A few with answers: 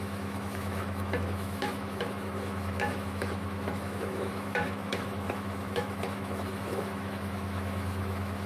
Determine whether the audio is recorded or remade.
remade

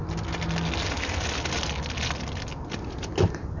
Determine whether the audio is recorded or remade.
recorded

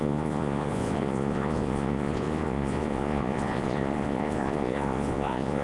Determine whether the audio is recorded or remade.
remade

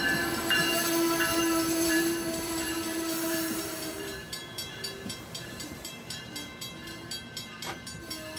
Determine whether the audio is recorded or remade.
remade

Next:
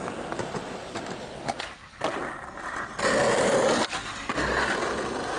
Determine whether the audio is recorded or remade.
recorded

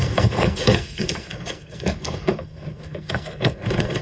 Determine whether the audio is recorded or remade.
remade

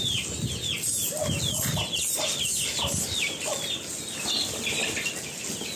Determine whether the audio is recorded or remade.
recorded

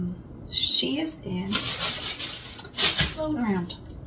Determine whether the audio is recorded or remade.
recorded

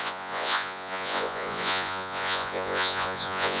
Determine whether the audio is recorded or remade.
remade